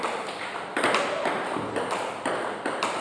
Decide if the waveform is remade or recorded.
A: recorded